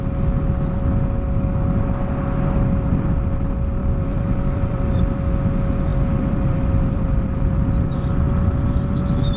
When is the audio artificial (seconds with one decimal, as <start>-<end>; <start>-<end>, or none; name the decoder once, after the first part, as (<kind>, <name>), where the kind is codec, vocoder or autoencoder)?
3.8-5.0 (vocoder, BigVGAN v2); 5.9-8.3